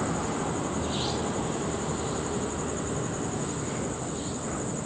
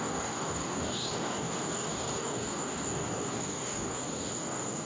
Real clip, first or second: first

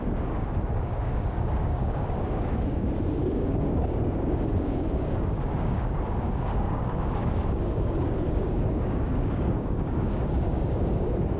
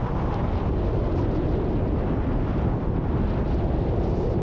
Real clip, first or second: second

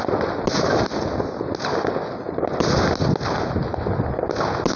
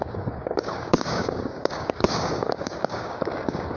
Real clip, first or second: first